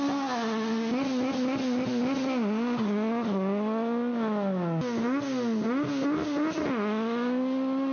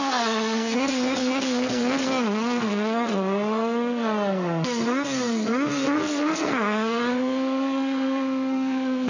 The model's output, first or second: second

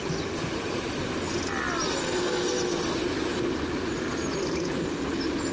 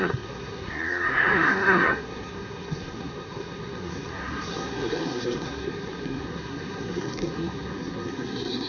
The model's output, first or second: second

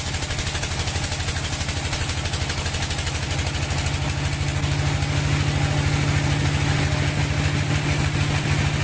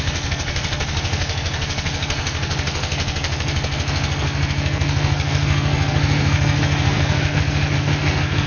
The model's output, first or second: second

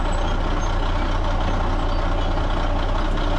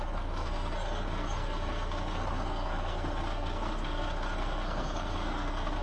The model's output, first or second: second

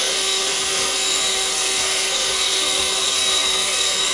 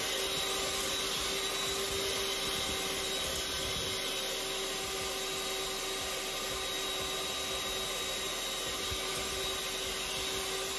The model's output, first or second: first